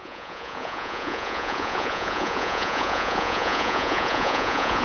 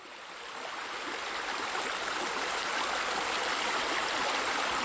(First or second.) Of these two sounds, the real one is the second